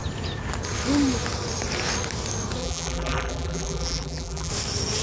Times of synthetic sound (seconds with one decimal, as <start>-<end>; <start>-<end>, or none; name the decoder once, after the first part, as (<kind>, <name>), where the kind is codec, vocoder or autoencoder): 2.6-4.5 (vocoder, BigVGAN v2)